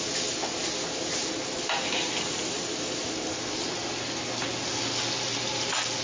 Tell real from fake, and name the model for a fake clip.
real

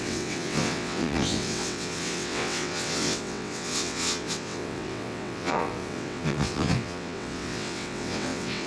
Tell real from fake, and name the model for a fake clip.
fake, vocoder, WaveNeXt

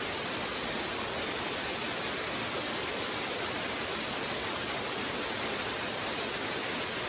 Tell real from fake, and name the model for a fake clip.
real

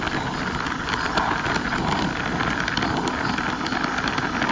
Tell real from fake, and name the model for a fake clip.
real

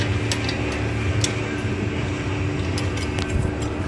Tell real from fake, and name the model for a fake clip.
real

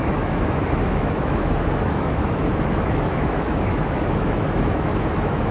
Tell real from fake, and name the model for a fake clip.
fake, autoencoder, DAC-VAE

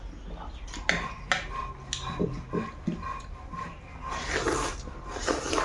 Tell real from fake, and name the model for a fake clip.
real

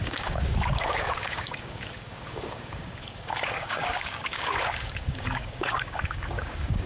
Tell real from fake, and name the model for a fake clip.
fake, codec, DAC